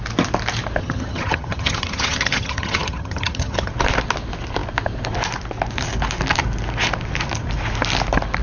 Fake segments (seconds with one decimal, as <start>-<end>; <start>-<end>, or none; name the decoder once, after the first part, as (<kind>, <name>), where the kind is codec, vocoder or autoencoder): 0.8-3.7 (vocoder, HiFi-GAN)